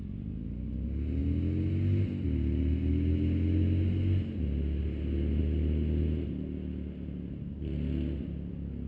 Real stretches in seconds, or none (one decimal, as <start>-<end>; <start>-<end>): 0.0-8.9